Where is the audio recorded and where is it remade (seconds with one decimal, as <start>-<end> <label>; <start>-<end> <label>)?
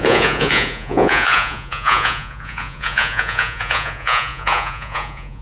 0.0-5.4 remade